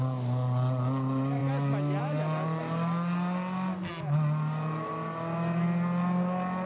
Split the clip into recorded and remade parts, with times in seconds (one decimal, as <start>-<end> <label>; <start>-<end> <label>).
0.0-6.7 recorded